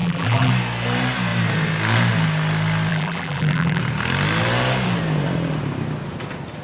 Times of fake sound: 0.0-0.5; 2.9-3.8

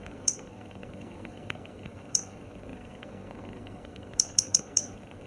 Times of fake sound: 0.0-5.3

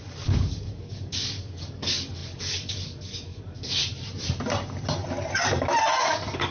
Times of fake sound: 0.0-3.8; 6.0-6.5

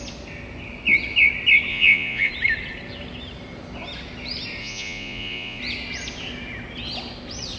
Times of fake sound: 1.7-2.3; 4.6-5.6

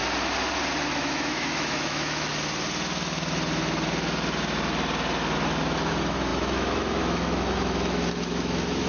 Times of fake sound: 0.8-2.3; 5.6-8.9

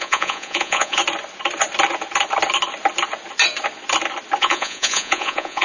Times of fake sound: 0.0-1.0; 4.4-5.6

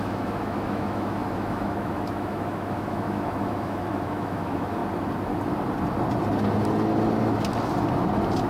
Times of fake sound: 0.0-4.8